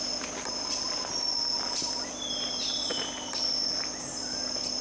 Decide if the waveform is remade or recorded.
recorded